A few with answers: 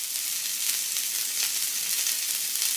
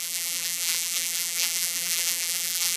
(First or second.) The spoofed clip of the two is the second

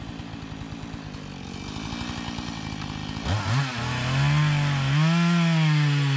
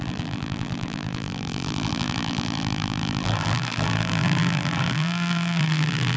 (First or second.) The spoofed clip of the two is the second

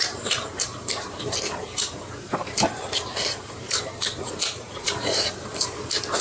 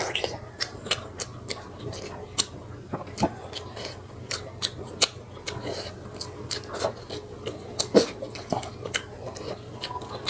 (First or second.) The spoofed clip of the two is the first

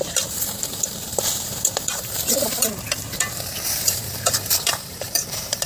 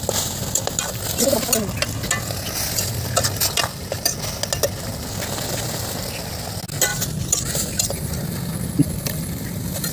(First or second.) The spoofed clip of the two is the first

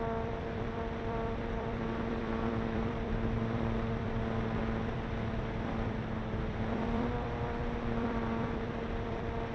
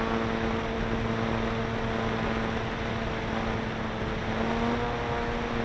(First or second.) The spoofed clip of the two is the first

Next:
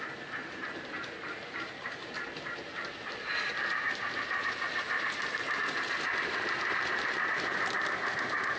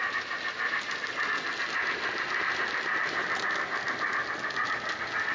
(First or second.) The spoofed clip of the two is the first